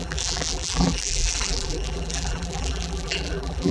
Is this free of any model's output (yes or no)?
no